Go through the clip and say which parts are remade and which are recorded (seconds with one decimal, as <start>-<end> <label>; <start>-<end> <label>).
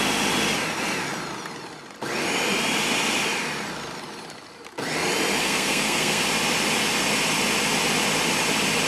0.0-5.4 recorded; 5.4-6.2 remade; 6.2-8.9 recorded